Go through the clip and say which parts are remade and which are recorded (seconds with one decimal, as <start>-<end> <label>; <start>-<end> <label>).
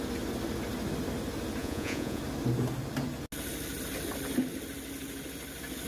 0.0-1.6 recorded; 1.6-2.2 remade; 2.2-5.9 recorded